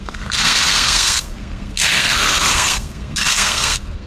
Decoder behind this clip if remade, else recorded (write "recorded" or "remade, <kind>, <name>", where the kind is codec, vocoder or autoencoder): remade, codec, SNAC